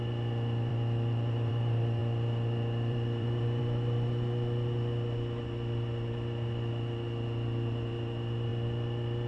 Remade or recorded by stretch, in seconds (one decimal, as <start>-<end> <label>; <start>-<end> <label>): 0.0-2.0 recorded; 2.0-3.6 remade; 3.6-8.5 recorded; 8.5-9.3 remade